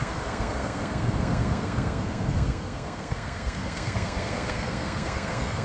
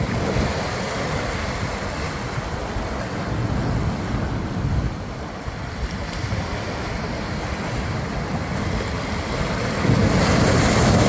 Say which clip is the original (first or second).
second